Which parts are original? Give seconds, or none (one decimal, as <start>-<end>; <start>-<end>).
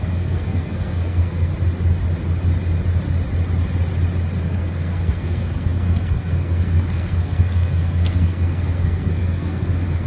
1.5-4.4